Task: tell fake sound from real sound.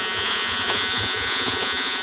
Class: fake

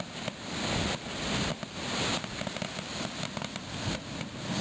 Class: real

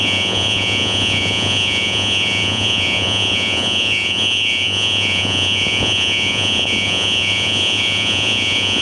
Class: fake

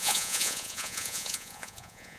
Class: fake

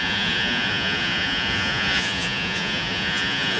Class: fake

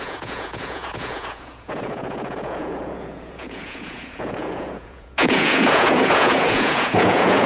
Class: fake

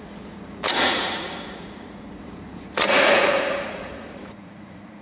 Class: fake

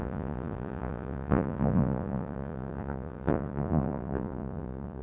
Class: fake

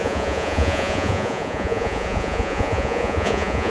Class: fake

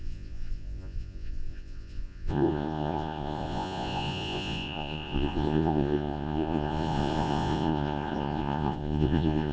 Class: fake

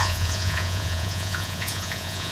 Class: fake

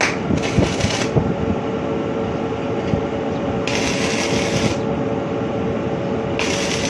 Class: real